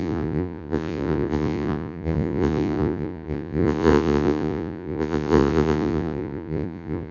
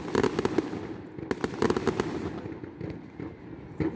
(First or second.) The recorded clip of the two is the second